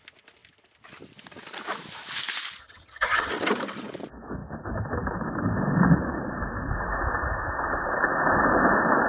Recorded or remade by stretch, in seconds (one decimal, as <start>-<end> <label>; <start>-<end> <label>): 0.0-2.6 recorded; 2.6-3.3 remade; 3.3-9.1 recorded